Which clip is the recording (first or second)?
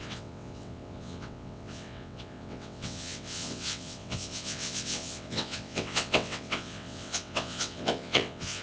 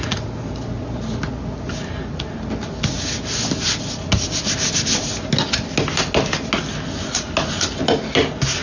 second